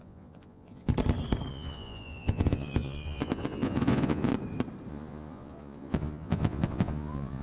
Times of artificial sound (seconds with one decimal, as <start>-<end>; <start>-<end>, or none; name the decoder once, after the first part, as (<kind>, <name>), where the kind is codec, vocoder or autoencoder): 0.0-0.9 (vocoder, Vocos); 1.5-4.3; 4.9-7.4